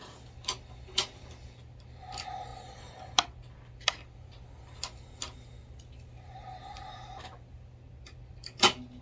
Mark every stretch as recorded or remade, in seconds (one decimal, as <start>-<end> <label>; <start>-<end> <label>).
0.0-9.0 recorded